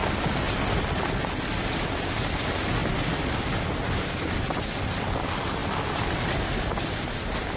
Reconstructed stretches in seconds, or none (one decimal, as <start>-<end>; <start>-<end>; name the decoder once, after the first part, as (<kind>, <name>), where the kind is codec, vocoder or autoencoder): none